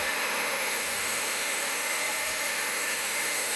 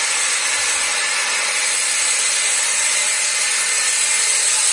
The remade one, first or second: first